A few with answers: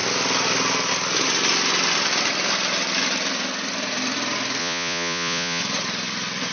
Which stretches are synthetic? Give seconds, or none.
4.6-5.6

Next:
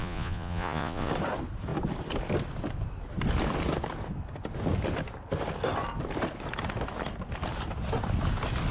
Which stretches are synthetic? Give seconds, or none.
0.0-1.1